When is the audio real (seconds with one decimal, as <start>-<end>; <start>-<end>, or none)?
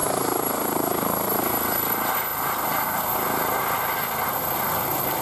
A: 0.0-2.3; 4.3-5.2